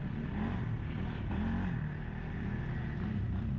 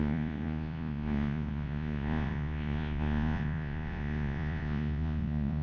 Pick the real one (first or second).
first